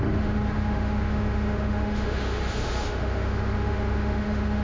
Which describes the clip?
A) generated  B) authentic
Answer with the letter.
A